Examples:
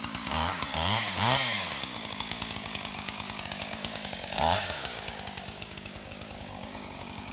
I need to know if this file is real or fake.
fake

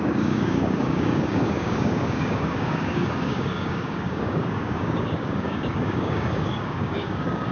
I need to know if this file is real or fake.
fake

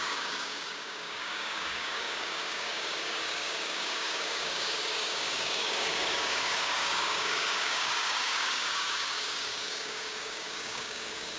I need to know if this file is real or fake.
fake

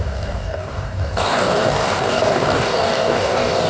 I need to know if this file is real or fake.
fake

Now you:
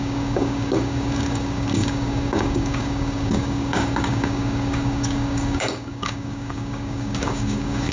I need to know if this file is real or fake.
fake